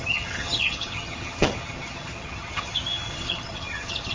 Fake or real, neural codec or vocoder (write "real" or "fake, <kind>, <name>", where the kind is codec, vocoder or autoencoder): fake, vocoder, HiFi-GAN